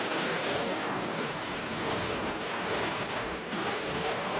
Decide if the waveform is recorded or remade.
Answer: remade